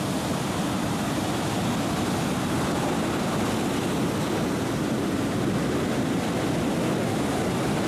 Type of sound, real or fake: real